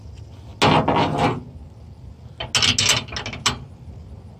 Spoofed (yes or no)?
no